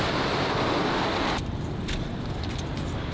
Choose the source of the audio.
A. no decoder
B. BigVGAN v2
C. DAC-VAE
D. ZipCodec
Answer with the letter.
A